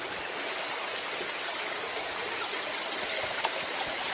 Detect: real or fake real